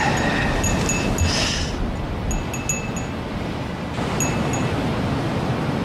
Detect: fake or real real